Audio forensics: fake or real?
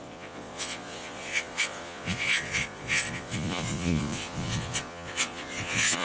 fake